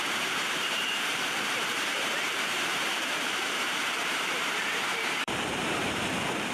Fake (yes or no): yes